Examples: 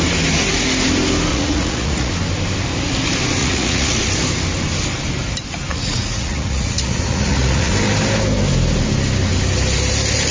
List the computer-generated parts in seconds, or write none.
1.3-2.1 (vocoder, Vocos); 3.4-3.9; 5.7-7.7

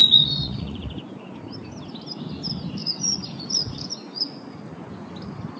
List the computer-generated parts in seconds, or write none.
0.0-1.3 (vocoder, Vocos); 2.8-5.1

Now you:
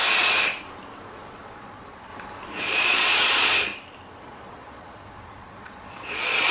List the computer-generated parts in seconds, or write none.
1.1-2.1 (vocoder, Vocos); 2.6-3.7; 4.2-6.5